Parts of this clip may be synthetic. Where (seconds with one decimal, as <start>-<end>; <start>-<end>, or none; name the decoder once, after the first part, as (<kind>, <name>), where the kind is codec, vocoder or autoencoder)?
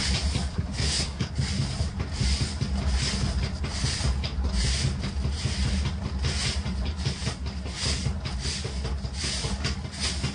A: 0.5-1.3 (codec, SNAC)